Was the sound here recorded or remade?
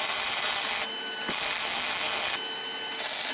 recorded